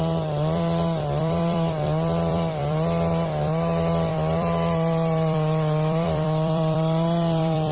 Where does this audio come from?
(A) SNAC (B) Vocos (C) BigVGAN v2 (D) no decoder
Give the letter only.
C